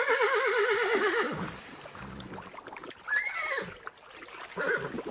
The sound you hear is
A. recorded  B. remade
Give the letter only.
A